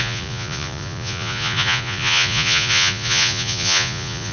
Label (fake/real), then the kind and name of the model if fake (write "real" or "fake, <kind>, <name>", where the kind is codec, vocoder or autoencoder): fake, vocoder, Vocos